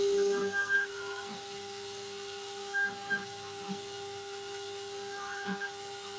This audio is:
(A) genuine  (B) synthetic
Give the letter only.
B